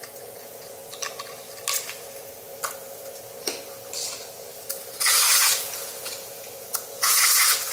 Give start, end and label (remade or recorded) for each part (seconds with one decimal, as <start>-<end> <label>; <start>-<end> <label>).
0.0-0.8 remade; 0.8-5.4 recorded; 5.4-7.7 remade